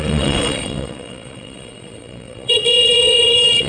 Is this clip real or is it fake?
fake